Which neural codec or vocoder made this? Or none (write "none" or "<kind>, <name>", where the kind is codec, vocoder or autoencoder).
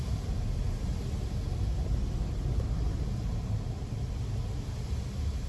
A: none